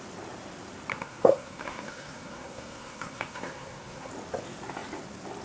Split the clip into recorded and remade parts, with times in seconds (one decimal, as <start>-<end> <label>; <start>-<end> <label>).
0.0-0.9 recorded; 0.9-4.1 remade; 4.1-5.4 recorded